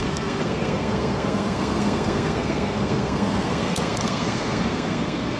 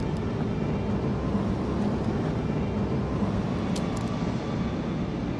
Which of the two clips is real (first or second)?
second